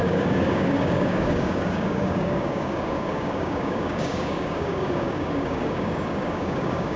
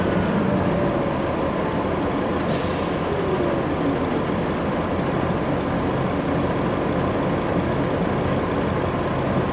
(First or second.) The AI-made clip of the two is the first